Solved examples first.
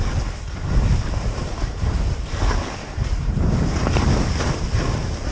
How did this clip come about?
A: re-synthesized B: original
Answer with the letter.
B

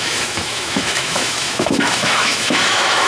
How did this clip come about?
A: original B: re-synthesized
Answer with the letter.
B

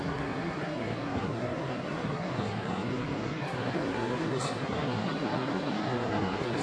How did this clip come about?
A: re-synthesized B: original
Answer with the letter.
A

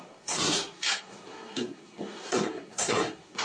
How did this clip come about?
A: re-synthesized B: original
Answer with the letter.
A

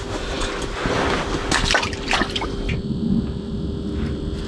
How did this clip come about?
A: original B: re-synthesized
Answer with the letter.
A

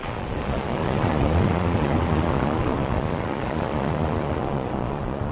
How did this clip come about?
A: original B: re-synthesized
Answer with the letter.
B